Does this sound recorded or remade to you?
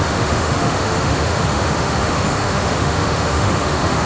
remade